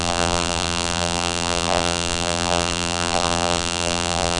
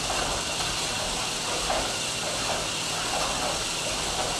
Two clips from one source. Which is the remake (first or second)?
first